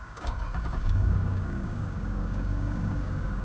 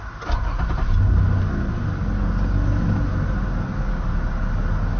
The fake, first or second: first